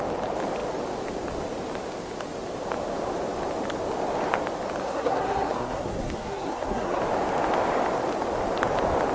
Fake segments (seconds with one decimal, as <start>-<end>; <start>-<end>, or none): 4.8-7.0